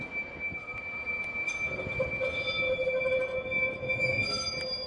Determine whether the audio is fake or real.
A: real